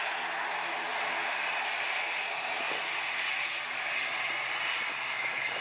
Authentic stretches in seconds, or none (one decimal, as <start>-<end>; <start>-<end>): 0.0-5.6